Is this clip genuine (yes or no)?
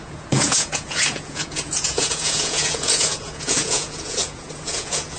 no